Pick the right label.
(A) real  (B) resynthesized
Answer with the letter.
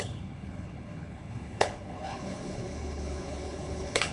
B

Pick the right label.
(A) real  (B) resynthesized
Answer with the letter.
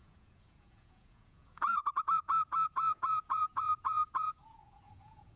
B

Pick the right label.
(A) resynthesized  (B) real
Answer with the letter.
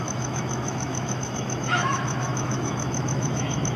A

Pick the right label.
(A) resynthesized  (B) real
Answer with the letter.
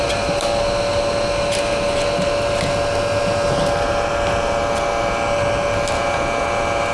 B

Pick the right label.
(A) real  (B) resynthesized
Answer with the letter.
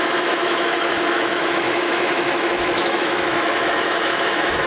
B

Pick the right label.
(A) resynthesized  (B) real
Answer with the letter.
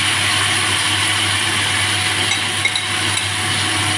B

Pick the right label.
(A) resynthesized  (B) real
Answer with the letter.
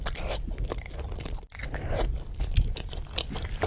A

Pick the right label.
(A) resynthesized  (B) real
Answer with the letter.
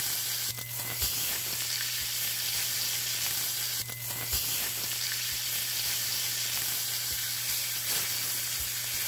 B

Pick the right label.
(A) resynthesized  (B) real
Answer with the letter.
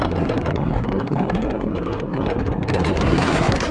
A